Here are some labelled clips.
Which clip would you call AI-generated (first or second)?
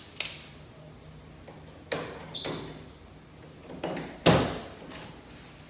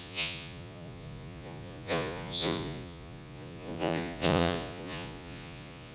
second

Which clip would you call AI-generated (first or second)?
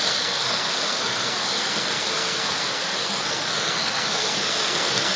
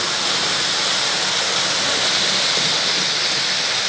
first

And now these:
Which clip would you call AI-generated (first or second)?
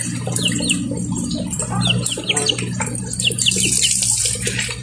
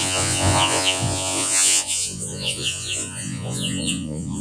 second